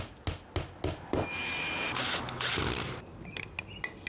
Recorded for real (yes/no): yes